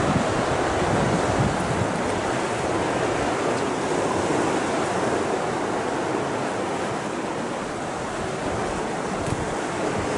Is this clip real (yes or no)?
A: yes